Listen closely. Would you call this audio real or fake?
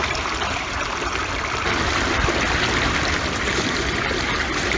fake